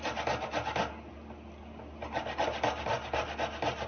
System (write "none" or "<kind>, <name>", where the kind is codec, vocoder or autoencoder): none